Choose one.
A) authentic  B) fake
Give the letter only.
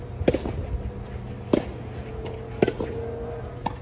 A